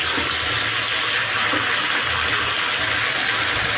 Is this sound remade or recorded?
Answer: recorded